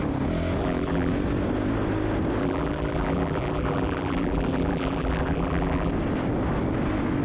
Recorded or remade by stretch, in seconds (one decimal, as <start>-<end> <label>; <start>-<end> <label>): 0.0-0.6 recorded; 0.6-1.1 remade; 1.1-2.4 recorded; 2.4-5.9 remade; 5.9-7.2 recorded